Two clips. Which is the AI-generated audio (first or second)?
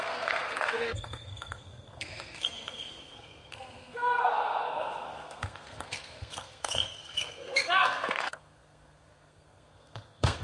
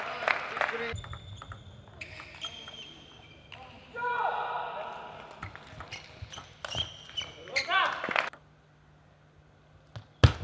first